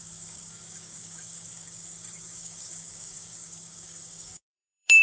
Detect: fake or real fake